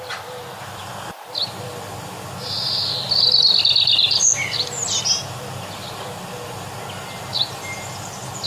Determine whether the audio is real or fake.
real